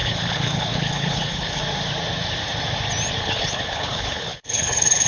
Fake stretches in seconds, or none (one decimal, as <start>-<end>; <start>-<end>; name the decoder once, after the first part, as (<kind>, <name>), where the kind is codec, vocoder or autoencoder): 0.0-1.6 (codec, HILCodec); 3.2-5.1